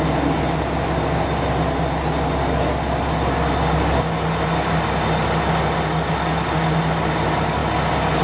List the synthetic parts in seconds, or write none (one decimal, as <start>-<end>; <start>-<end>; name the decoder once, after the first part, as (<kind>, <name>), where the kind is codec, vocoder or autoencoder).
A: none